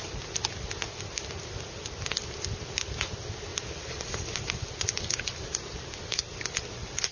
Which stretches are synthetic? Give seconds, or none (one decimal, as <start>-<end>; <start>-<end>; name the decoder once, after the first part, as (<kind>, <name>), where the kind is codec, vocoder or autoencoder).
none